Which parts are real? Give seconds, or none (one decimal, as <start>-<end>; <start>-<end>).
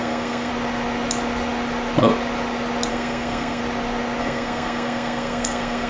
0.5-2.9; 3.6-4.2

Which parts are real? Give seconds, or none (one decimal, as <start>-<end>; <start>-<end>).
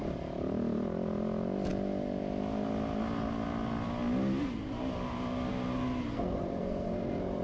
0.0-6.1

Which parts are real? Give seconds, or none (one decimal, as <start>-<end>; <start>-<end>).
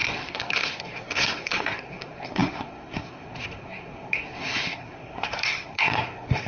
none